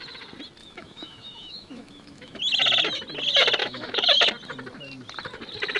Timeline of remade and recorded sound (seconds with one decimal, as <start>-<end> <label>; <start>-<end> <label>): 0.0-0.6 recorded; 0.6-2.4 remade; 2.4-3.6 recorded; 3.6-4.3 remade; 4.3-5.8 recorded